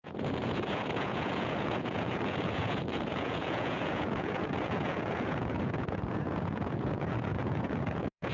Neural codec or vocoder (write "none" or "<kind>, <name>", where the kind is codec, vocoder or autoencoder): vocoder, Vocos